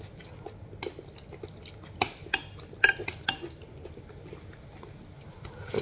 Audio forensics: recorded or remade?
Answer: recorded